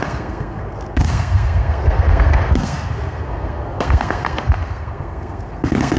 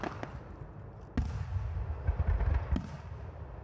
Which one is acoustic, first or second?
second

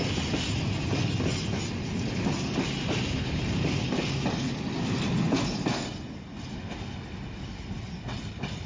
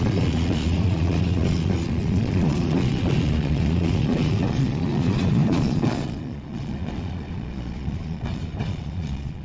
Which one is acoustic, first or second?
first